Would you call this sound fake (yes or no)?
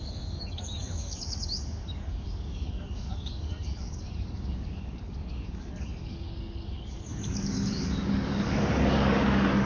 yes